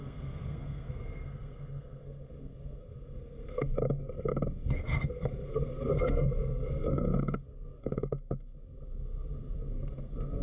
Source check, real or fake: fake